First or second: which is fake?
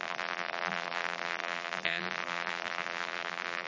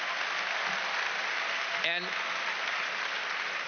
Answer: first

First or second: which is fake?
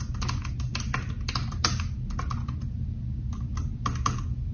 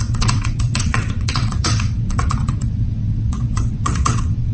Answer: second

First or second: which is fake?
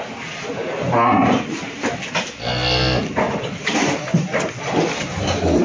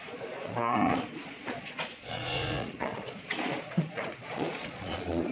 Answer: second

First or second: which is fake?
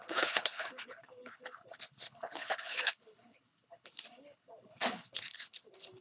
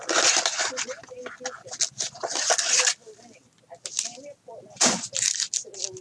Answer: first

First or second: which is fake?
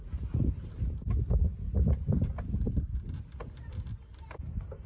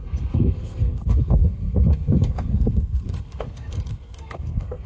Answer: second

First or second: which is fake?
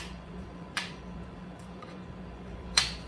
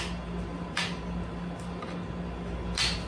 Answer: first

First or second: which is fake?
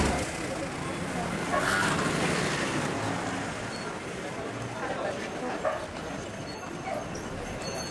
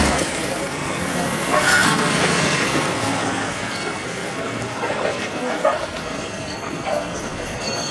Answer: second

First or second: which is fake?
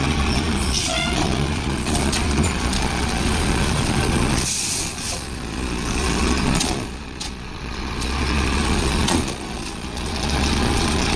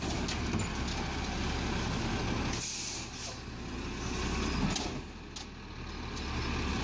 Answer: first